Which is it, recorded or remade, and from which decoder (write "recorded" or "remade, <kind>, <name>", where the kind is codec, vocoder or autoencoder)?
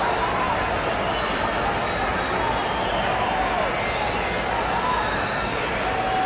recorded